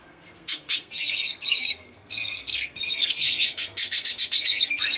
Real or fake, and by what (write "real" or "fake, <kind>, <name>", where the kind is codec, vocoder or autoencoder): fake, codec, SNAC